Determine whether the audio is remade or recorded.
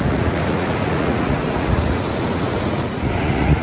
remade